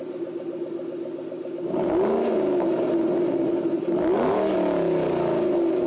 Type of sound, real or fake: real